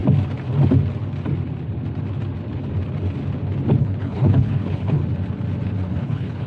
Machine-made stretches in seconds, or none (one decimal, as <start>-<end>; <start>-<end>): 3.8-5.0; 5.9-6.5